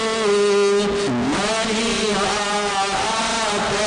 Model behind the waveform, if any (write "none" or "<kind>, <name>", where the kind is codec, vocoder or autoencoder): none